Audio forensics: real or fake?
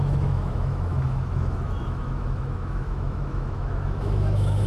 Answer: fake